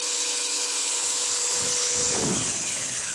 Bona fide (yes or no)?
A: no